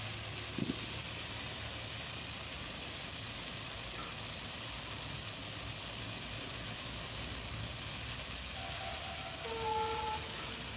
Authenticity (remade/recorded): recorded